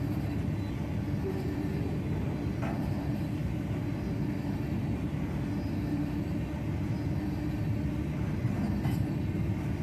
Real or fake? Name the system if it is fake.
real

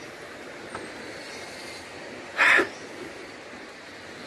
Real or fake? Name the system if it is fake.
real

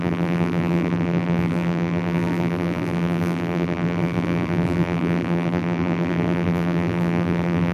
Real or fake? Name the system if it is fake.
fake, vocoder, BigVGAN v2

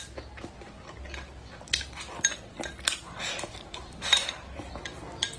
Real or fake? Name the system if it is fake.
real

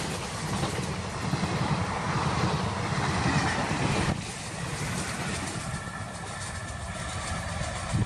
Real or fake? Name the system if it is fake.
real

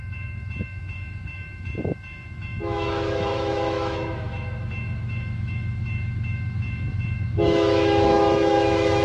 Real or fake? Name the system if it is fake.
fake, autoencoder, DAC-VAE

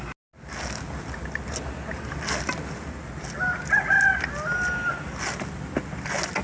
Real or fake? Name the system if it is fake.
real